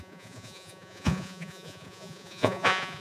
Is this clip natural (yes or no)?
no